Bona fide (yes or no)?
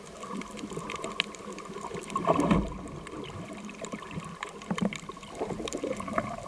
no